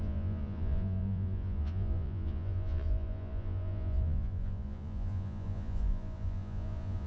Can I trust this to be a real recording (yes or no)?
no